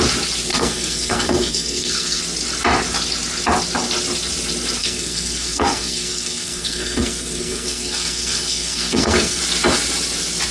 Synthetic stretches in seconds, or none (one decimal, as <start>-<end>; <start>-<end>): 0.5-2.2; 4.8-9.4